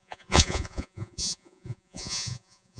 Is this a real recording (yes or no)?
no